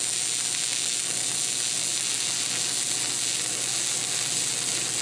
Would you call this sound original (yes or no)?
yes